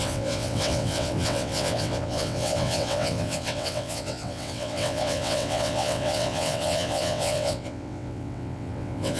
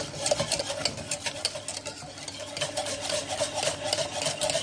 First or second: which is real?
second